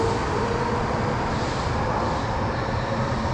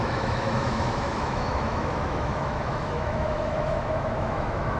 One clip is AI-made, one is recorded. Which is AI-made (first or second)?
second